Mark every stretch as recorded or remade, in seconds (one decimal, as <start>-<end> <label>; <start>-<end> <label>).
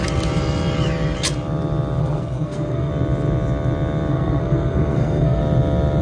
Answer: 0.0-2.0 recorded; 2.0-2.9 remade; 2.9-4.1 recorded; 4.1-5.4 remade; 5.4-6.0 recorded